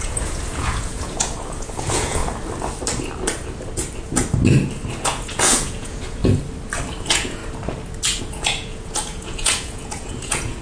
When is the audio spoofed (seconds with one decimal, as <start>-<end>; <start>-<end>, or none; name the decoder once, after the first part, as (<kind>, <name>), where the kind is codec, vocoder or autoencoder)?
0.0-2.2 (vocoder, Vocos); 5.0-6.2; 7.0-7.4; 8.2-10.6